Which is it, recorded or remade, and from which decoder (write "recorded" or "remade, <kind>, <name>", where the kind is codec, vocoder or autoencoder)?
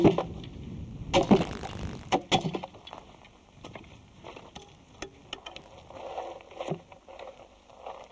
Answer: recorded